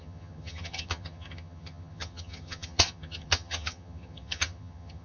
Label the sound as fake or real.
fake